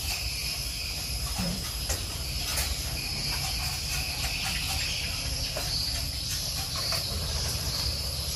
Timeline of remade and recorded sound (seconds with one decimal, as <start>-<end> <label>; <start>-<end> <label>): 0.0-2.5 remade; 2.5-6.2 recorded; 6.2-8.4 remade